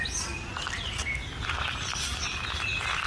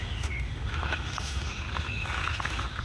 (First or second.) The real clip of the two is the first